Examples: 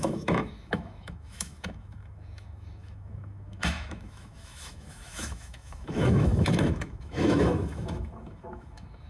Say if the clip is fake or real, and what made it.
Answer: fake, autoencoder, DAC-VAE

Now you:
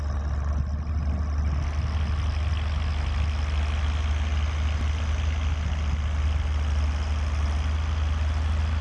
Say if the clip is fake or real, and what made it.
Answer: real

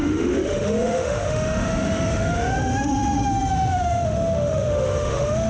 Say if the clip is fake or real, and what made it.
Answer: fake, autoencoder, DAC-VAE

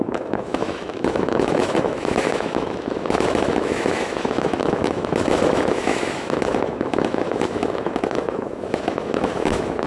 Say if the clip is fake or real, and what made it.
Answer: fake, autoencoder, DAC-VAE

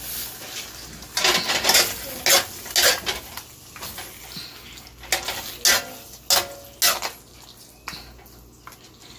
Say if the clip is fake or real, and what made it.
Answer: real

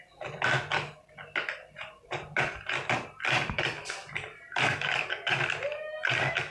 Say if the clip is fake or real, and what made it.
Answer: real